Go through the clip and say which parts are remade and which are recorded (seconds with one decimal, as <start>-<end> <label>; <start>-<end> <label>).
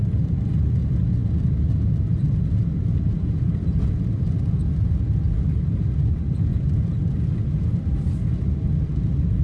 0.0-9.4 recorded